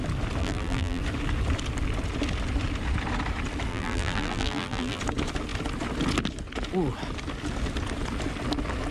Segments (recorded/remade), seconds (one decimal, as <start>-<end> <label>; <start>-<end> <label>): 0.0-0.4 recorded; 0.4-1.0 remade; 1.0-3.7 recorded; 3.7-5.0 remade; 5.0-8.9 recorded